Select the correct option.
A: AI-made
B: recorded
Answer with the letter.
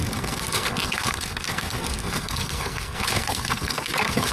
A